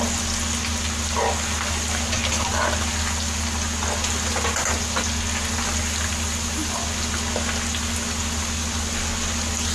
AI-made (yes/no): no